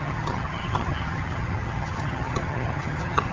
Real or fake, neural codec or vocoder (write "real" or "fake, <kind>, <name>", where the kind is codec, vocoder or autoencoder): fake, vocoder, HiFi-GAN